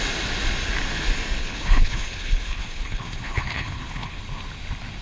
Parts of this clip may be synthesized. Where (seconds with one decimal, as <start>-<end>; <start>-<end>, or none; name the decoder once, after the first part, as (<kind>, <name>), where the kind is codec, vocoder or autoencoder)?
1.4-4.2 (codec, HILCodec)